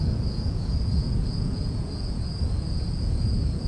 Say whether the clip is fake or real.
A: fake